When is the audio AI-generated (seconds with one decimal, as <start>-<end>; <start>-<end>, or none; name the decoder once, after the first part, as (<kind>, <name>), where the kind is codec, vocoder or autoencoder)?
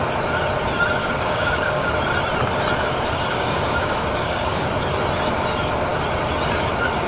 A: 1.0-1.9 (codec, DAC); 3.3-4.7